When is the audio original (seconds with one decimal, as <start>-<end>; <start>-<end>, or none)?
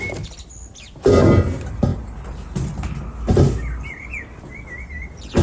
0.0-5.4